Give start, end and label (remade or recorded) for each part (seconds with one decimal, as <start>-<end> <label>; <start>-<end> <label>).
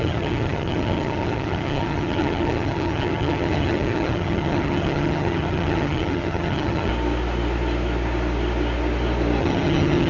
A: 0.0-6.9 remade; 6.9-9.4 recorded; 9.4-10.1 remade